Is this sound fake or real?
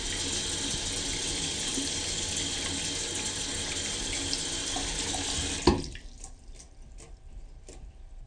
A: real